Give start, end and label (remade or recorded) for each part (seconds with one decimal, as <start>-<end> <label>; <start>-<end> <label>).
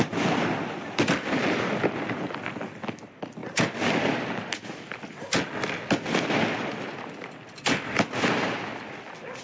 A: 0.0-9.4 recorded